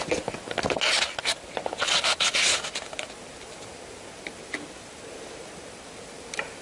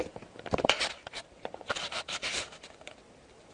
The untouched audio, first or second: first